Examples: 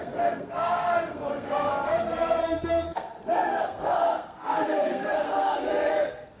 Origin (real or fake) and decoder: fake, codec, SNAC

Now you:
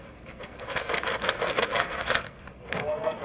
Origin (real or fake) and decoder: fake, codec, SNAC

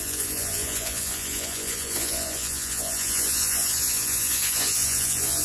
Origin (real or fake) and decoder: fake, vocoder, Vocos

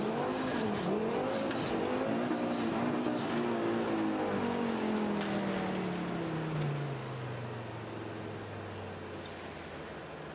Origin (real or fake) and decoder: real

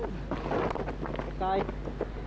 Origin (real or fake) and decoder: real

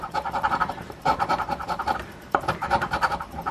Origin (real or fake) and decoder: fake, vocoder, BigVGAN v2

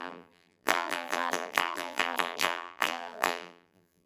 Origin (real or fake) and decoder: fake, vocoder, BigVGAN v2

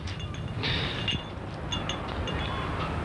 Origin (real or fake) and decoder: real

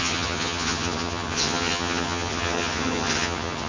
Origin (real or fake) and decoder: fake, vocoder, HiFi-GAN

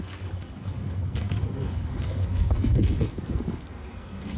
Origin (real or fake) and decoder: fake, codec, SNAC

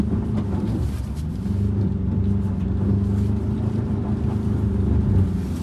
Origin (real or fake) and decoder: real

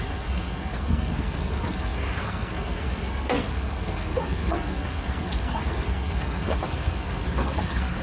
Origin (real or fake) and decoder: fake, codec, SNAC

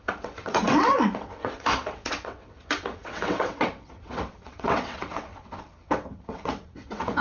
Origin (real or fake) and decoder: fake, vocoder, WaveNeXt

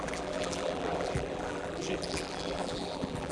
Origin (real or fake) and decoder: fake, vocoder, BigVGAN v2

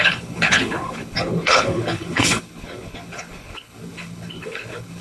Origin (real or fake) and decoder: fake, codec, HILCodec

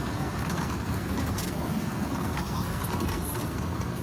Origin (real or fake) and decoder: fake, codec, SNAC